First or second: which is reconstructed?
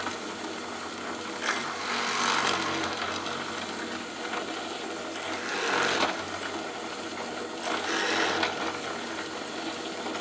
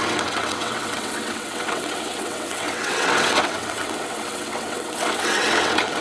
second